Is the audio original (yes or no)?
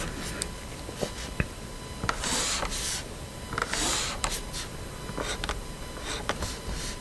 yes